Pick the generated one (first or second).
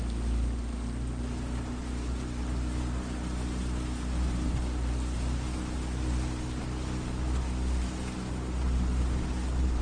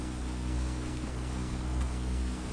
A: second